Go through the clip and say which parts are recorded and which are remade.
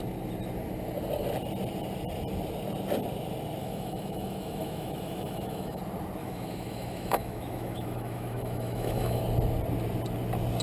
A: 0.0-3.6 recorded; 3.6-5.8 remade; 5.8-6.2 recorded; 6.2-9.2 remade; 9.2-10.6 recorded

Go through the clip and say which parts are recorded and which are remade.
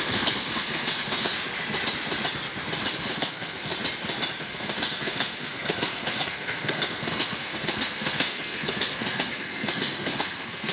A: 0.0-1.3 remade; 1.3-3.1 recorded; 3.1-3.7 remade; 3.7-4.4 recorded; 4.4-10.7 remade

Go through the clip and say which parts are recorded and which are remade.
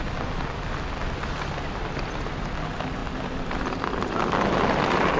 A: 0.0-5.2 recorded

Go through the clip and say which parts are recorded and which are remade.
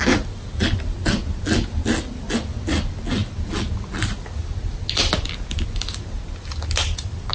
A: 0.0-7.3 recorded